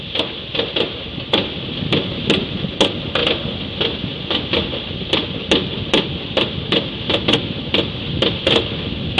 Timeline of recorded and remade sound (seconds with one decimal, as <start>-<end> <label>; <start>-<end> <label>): 0.0-9.2 recorded